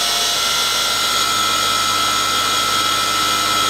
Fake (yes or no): no